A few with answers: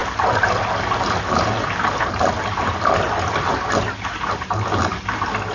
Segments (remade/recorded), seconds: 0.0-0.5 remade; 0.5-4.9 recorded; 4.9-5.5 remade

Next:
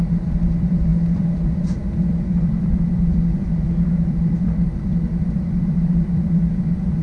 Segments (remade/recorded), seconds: 0.0-4.9 remade; 4.9-5.6 recorded; 5.6-7.0 remade

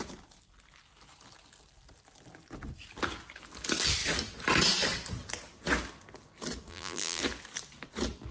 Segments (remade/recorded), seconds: 0.0-6.7 recorded; 6.7-7.2 remade; 7.2-8.3 recorded

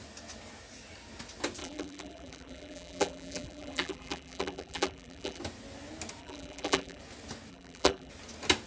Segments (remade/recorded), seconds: 0.0-1.6 recorded; 1.6-5.4 remade; 5.4-6.2 recorded; 6.2-7.0 remade; 7.0-7.5 recorded; 7.5-8.1 remade; 8.1-8.7 recorded